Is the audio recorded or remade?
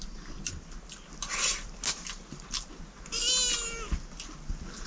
recorded